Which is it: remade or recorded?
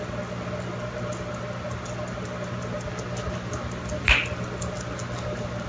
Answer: recorded